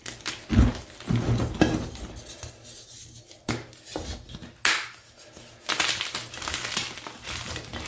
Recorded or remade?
recorded